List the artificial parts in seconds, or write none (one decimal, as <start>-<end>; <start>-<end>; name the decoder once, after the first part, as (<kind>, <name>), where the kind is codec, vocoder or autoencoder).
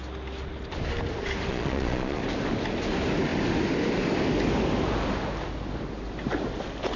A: 1.5-2.2 (vocoder, Vocos)